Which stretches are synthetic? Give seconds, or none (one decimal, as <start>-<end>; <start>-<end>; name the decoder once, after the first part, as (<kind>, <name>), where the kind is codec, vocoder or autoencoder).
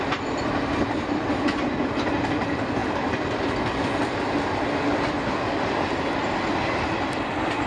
none